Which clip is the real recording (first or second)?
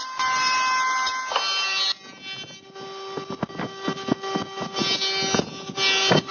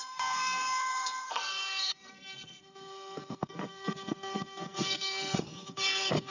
first